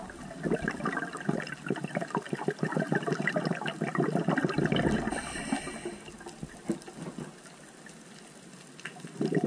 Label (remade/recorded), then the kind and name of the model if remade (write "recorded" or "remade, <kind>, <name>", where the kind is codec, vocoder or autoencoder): recorded